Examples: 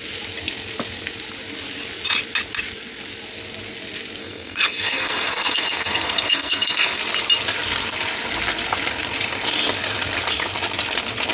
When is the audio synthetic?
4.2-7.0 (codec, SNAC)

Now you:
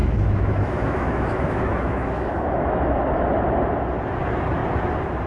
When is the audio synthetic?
0.0-3.0 (autoencoder, DAC-VAE)

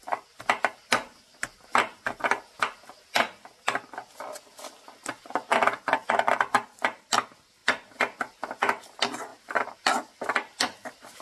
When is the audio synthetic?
none

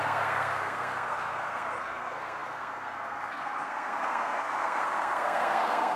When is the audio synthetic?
0.0-6.0 (codec, SNAC)

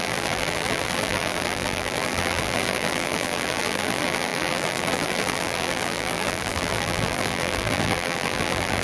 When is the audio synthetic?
0.0-8.8 (vocoder, BigVGAN v2)

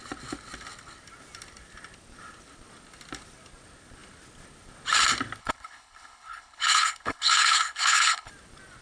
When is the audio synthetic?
5.4-8.3 (codec, HILCodec)